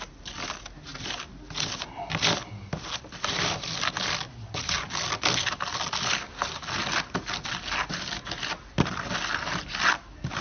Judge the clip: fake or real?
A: real